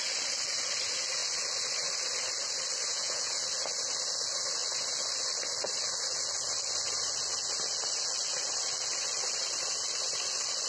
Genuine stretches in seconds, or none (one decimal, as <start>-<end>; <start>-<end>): 0.0-2.9; 3.4-10.7